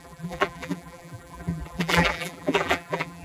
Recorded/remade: remade